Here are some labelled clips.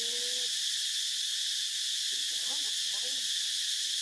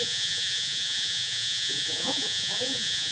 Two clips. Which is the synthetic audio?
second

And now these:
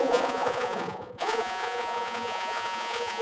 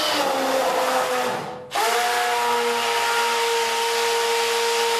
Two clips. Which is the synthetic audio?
first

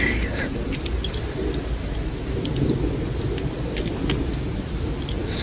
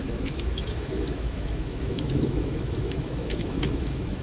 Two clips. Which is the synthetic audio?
second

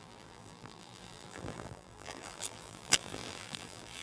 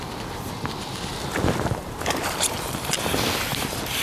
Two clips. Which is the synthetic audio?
first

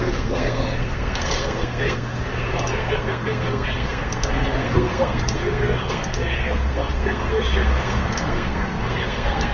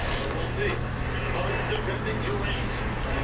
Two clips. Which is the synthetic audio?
first